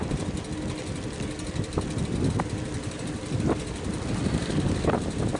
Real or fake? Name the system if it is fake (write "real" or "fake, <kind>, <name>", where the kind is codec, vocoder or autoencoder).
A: real